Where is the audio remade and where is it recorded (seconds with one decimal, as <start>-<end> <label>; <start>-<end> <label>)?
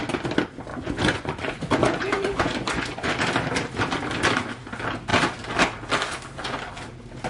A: 0.0-0.7 recorded; 0.7-3.1 remade; 3.1-7.3 recorded